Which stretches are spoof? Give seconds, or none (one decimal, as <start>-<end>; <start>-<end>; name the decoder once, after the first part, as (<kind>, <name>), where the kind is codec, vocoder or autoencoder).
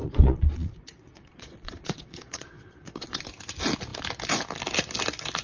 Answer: 0.0-3.2 (vocoder, Vocos)